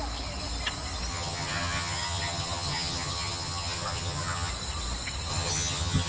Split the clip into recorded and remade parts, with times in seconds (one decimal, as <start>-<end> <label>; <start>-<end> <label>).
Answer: 0.0-1.1 recorded; 1.1-4.5 remade; 4.5-5.3 recorded; 5.3-6.1 remade